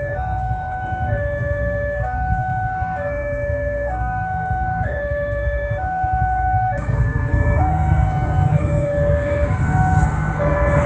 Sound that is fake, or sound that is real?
fake